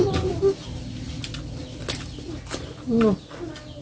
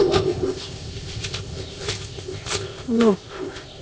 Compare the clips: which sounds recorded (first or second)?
first